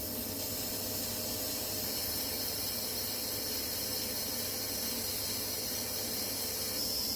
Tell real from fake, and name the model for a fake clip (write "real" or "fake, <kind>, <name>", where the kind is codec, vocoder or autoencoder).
real